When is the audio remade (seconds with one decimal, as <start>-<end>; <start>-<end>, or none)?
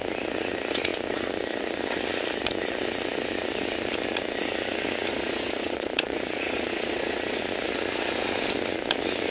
5.1-7.4